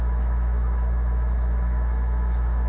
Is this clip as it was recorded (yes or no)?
no